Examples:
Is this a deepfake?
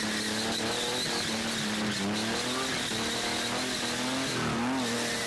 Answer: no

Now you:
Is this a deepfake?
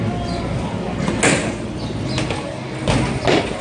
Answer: no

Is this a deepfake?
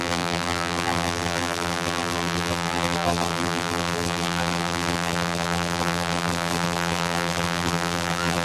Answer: yes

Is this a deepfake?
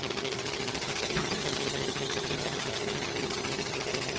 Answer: yes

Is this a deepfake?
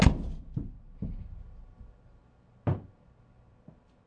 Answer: no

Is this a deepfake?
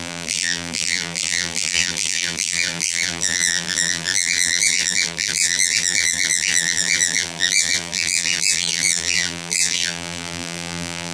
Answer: yes